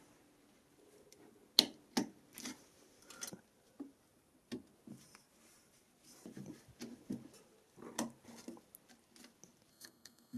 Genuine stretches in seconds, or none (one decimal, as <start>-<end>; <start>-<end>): 0.0-9.7

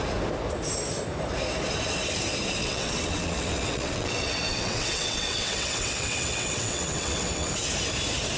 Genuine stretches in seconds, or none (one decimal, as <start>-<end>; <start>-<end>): 0.0-2.6; 7.5-8.4

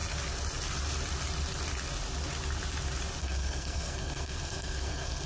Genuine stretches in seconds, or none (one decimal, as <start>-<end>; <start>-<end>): 0.0-3.2

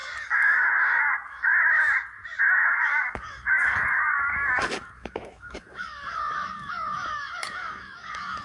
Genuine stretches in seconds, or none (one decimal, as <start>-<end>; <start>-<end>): 1.5-2.4

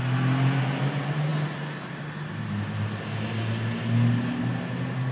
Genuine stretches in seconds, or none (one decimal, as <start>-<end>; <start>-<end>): 0.0-5.1

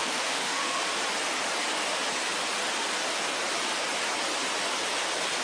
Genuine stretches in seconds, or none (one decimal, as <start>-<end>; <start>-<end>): 0.8-5.4

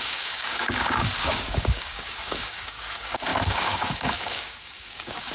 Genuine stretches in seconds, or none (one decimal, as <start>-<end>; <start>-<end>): none